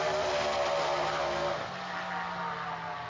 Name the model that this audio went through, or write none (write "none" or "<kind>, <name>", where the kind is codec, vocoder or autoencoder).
none